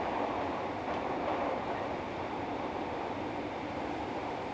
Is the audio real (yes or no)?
no